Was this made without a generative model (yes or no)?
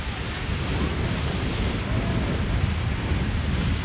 yes